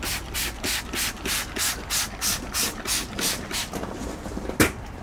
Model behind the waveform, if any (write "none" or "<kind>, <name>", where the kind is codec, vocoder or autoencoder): vocoder, BigVGAN v2